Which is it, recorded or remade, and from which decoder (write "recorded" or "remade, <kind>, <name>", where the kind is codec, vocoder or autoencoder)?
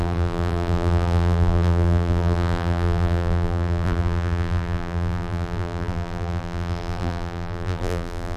remade, vocoder, BigVGAN v2